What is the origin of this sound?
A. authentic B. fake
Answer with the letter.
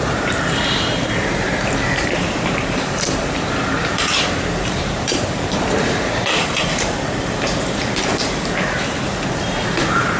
B